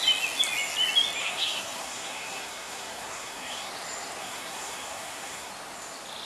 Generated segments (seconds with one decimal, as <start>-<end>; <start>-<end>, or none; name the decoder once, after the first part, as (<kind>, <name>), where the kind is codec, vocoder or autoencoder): 1.2-3.7 (codec, SNAC); 4.2-5.5